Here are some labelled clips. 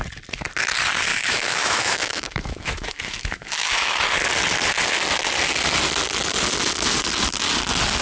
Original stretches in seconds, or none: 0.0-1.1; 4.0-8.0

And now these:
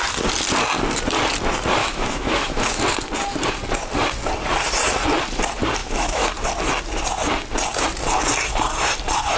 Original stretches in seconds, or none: 0.0-1.8; 2.8-5.8; 6.3-9.4

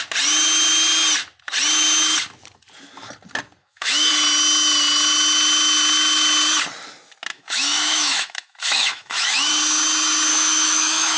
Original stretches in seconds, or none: 0.0-3.6; 4.1-7.3; 9.5-10.3

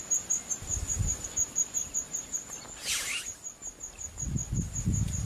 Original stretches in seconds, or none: 0.0-5.3

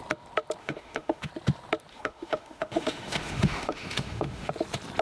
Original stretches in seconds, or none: 0.0-0.6; 1.3-1.9; 4.5-5.0

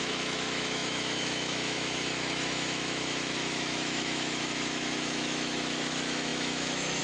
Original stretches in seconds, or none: none